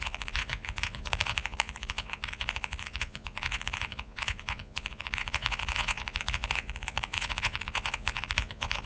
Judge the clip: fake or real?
fake